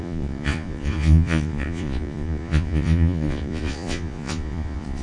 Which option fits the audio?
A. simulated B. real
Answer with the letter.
A